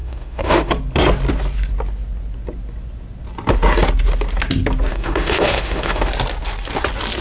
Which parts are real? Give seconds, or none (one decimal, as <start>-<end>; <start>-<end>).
0.7-4.9; 6.1-7.2